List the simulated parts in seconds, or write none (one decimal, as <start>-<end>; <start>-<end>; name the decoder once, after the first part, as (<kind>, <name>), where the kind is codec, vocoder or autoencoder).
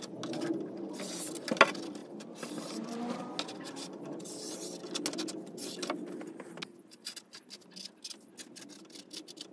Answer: 2.0-3.0 (vocoder, BigVGAN v2)